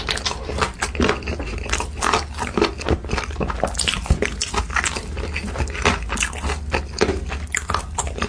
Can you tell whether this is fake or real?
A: real